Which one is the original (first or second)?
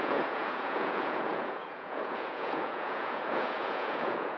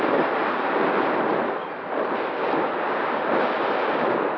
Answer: second